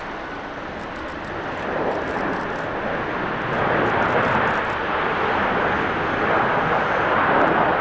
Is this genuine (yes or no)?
yes